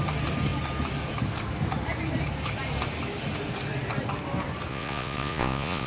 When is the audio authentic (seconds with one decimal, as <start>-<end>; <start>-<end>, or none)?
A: 0.0-4.7